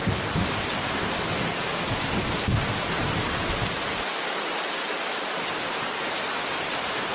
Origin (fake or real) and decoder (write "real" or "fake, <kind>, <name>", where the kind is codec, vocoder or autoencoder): real